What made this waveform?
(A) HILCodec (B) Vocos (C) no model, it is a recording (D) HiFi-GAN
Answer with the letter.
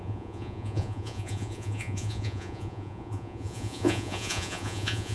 B